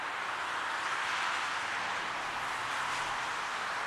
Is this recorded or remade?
recorded